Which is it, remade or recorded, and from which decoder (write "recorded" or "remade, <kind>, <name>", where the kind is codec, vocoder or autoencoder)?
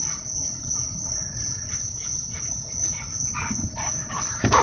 recorded